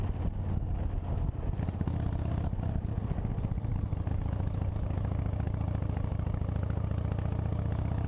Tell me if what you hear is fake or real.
real